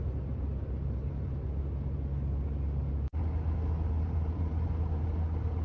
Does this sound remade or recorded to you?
recorded